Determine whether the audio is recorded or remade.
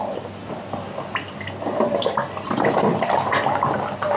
recorded